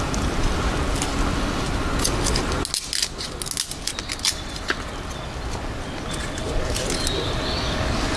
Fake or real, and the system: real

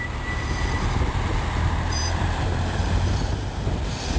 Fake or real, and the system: fake, vocoder, BigVGAN v2